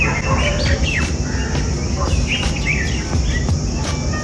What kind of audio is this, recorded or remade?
recorded